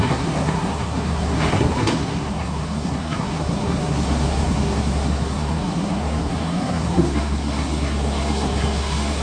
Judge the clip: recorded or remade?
remade